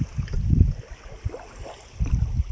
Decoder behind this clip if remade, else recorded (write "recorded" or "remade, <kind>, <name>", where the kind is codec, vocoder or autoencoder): recorded